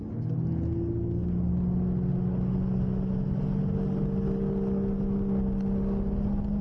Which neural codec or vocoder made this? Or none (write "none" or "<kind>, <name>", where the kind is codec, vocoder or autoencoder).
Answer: none